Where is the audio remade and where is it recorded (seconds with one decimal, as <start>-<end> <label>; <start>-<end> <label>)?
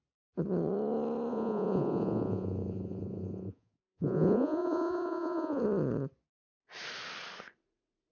0.0-1.3 recorded; 1.3-5.6 remade; 5.6-8.1 recorded